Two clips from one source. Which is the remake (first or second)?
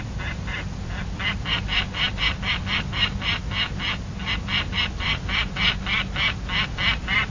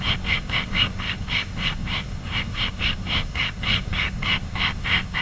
second